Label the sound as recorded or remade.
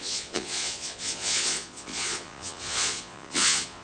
remade